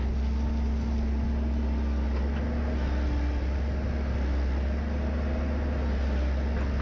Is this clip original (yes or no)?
yes